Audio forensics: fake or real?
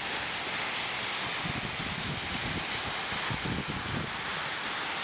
real